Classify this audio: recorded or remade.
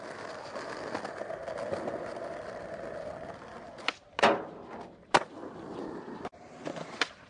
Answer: recorded